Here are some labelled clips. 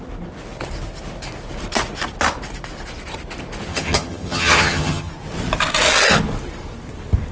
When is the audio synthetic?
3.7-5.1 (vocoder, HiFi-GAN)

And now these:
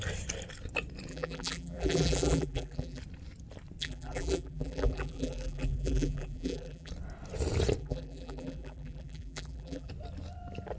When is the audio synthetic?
1.1-3.0 (vocoder, BigVGAN v2); 3.8-6.9; 7.8-9.9